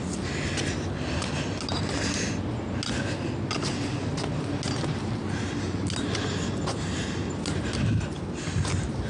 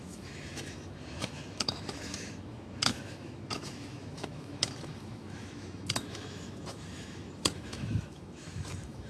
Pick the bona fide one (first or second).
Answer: first